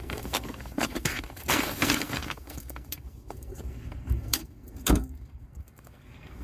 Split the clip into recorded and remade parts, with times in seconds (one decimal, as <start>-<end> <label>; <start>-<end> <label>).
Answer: 0.0-6.4 remade